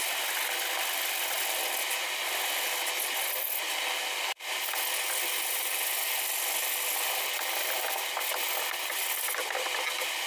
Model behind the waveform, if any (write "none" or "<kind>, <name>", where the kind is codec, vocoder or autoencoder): none